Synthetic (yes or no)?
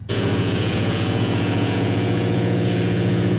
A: yes